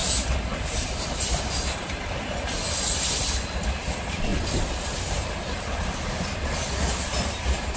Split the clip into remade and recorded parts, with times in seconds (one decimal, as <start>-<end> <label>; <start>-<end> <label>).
0.0-7.8 recorded